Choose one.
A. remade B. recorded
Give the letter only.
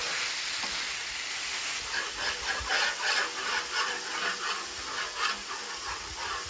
B